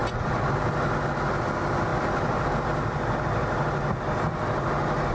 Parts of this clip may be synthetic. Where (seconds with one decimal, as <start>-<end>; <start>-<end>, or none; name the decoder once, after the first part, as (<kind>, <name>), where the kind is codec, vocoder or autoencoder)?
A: 1.9-2.5 (vocoder, BigVGAN v2)